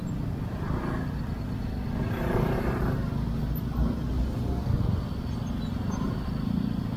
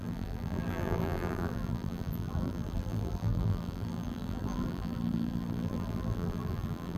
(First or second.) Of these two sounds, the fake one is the second